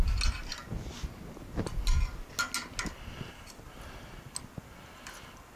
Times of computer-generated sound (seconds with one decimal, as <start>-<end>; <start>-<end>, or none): none